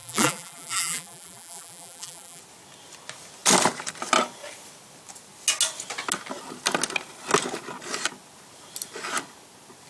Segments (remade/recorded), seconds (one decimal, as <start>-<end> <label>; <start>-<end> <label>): 0.0-2.4 remade; 2.4-9.9 recorded